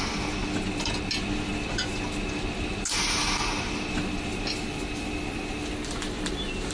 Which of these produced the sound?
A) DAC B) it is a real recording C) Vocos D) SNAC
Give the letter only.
B